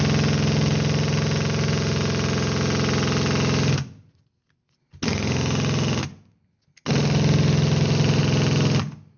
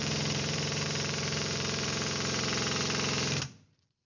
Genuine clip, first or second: first